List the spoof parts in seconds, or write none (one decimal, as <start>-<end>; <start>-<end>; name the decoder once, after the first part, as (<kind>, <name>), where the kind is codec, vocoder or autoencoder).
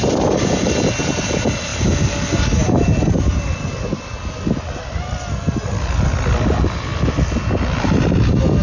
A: none